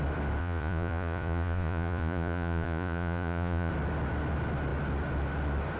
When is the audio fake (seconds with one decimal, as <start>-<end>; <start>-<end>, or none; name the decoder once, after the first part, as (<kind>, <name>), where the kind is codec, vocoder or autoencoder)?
0.4-3.7 (vocoder, Vocos)